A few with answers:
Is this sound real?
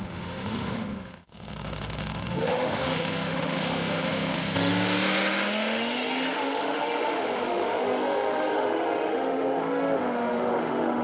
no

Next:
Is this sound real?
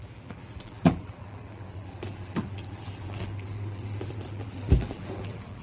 no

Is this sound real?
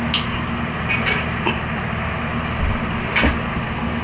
yes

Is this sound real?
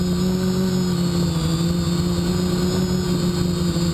yes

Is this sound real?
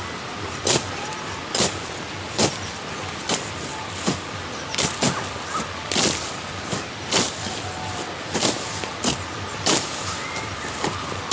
yes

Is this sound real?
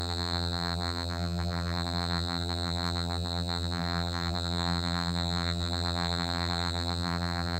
no